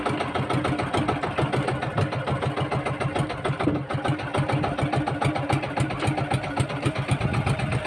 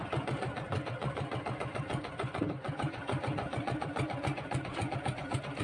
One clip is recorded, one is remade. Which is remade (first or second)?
second